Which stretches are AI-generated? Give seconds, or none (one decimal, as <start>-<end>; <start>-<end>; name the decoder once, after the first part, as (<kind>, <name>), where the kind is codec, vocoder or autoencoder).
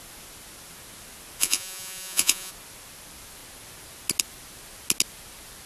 1.4-2.5 (vocoder, Vocos)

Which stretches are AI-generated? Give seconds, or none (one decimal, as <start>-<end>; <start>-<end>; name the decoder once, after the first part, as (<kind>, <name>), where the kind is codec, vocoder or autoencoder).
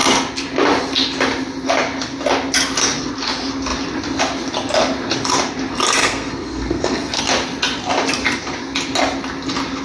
6.0-7.2 (codec, SNAC)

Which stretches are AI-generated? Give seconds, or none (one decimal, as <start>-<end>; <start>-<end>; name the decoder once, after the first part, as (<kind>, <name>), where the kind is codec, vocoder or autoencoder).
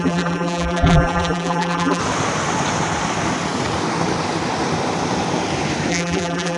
0.0-2.0 (vocoder, BigVGAN v2); 5.9-6.6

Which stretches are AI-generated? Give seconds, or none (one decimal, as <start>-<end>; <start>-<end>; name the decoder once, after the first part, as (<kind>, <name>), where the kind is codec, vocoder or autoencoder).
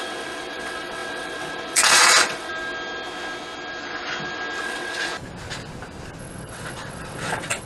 0.0-2.5 (vocoder, WaveNeXt); 4.6-5.1; 6.2-7.7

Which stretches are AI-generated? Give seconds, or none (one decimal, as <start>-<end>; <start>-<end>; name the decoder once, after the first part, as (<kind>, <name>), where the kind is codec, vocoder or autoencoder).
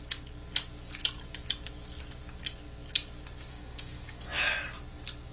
3.5-4.4 (codec, SNAC)